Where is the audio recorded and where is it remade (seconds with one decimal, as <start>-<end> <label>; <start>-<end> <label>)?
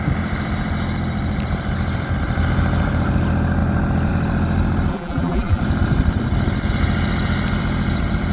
0.0-4.9 recorded; 4.9-5.6 remade; 5.6-8.3 recorded